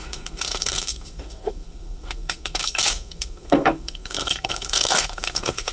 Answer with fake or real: fake